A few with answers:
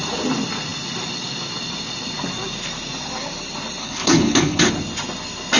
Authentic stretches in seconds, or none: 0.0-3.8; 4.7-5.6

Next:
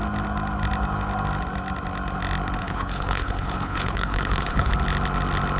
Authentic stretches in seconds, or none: 0.0-2.6; 4.7-5.6

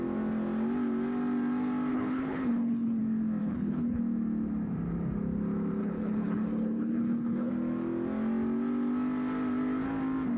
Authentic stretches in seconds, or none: 0.0-1.9; 3.0-3.4; 4.0-5.8; 7.5-10.4

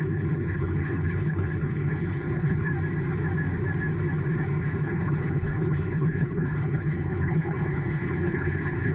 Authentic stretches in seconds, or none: 2.7-4.6

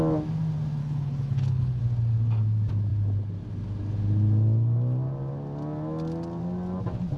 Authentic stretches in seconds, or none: 0.0-0.8; 1.8-7.2